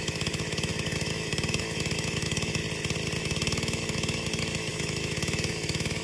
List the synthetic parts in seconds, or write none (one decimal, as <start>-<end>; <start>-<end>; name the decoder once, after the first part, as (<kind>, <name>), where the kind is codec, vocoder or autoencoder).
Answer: 0.0-2.6 (autoencoder, DAC-VAE); 3.2-6.0

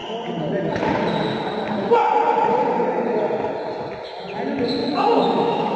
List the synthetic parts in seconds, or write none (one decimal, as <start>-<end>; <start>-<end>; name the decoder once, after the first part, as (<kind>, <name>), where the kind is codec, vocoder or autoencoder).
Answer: 4.8-5.8 (autoencoder, DAC-VAE)

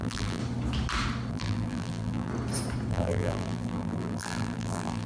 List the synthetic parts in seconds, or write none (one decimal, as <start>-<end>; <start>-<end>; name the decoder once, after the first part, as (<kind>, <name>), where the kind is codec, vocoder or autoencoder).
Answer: 0.0-0.4 (vocoder, BigVGAN v2); 1.3-2.3; 2.9-5.1

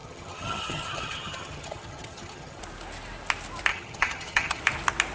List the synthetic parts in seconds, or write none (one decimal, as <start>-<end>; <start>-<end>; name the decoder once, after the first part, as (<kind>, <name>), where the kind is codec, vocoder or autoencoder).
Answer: 0.0-2.6 (vocoder, HiFi-GAN); 3.7-4.6

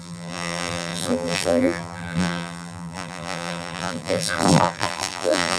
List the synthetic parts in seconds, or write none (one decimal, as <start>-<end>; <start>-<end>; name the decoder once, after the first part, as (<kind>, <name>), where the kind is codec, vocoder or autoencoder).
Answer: 0.0-5.6 (vocoder, BigVGAN v2)

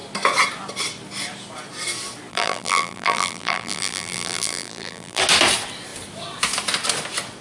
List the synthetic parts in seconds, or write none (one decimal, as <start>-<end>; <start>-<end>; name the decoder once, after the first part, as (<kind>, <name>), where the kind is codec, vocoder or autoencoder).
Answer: 2.3-5.2 (vocoder, BigVGAN v2)